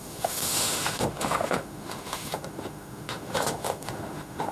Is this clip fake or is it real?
fake